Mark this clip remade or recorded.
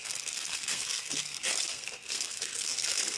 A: remade